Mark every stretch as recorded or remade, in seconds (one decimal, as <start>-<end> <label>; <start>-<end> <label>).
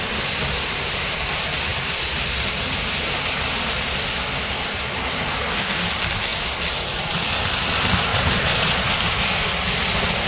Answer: 0.0-8.1 recorded; 8.1-8.9 remade; 8.9-10.3 recorded